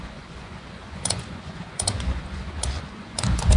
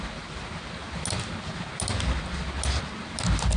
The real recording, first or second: second